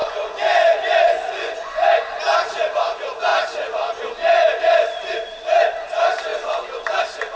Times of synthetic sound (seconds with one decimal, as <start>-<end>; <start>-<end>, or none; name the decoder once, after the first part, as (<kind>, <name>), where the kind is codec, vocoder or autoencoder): 0.0-2.0 (vocoder, Vocos)